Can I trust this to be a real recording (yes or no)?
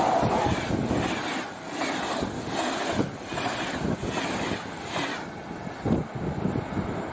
yes